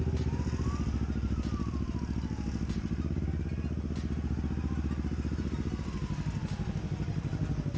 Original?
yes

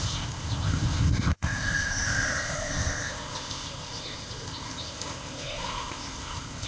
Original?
no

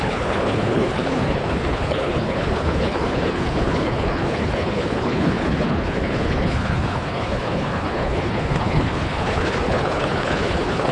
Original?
no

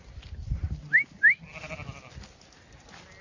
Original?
yes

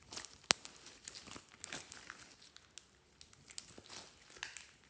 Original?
yes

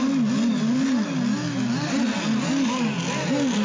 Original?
yes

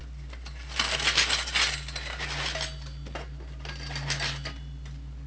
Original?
yes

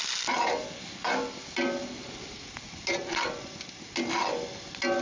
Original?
yes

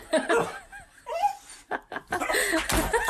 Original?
yes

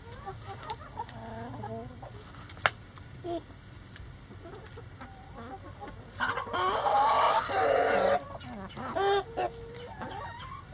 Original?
yes